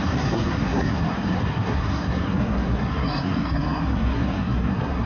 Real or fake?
fake